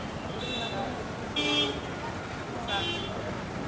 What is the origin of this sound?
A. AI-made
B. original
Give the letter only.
B